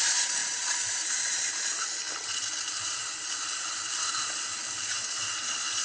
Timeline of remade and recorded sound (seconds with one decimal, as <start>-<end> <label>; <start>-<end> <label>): 0.0-0.4 recorded; 0.4-1.1 remade; 1.1-5.8 recorded